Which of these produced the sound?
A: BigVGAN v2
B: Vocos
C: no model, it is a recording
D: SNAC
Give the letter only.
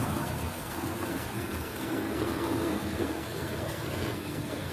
D